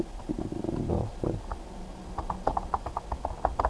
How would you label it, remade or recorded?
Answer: recorded